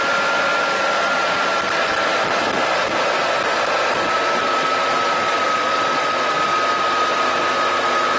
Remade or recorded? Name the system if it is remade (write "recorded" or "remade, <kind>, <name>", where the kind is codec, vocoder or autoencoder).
recorded